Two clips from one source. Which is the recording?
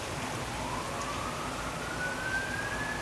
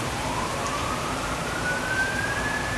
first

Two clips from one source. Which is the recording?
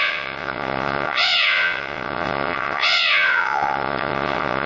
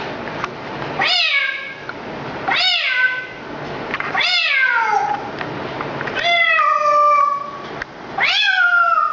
second